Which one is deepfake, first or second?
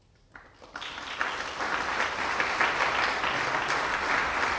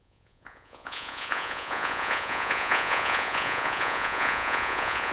second